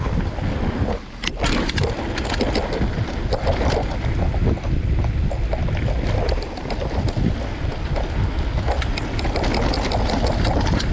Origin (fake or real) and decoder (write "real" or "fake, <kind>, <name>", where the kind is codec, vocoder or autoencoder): real